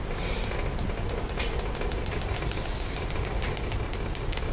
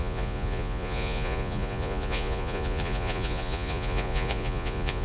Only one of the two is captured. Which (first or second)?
first